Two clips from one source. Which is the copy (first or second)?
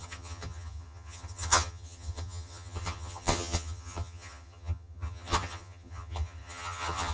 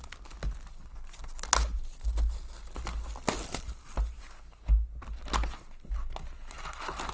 first